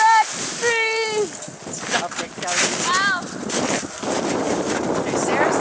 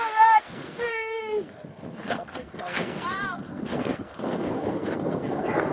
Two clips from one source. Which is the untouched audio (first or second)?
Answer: first